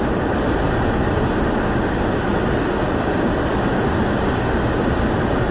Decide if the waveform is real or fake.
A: real